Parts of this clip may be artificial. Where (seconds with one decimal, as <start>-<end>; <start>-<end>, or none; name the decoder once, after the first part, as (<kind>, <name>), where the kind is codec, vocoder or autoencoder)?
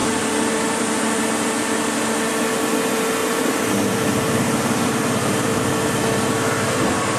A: 0.0-1.2 (vocoder, BigVGAN v2); 3.2-5.7